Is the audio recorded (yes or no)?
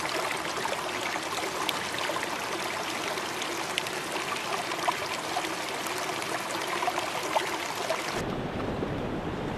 yes